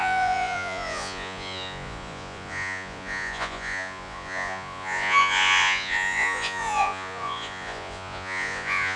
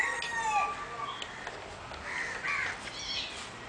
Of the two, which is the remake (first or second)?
first